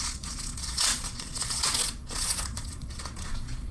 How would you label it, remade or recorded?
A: remade